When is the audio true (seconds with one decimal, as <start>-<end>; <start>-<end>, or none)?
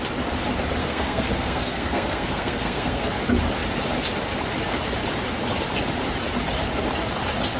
0.0-0.8; 3.2-7.6